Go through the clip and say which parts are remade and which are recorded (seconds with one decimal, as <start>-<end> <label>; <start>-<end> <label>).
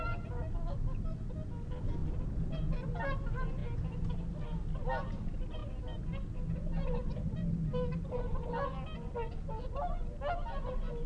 0.0-2.0 recorded; 2.0-2.6 remade; 2.6-7.0 recorded; 7.0-8.5 remade; 8.5-11.1 recorded